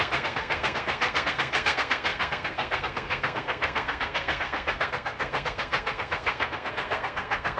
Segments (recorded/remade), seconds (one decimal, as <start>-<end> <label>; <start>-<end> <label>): 0.0-7.6 remade